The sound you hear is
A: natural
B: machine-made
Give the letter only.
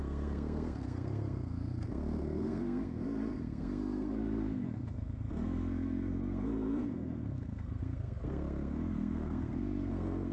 B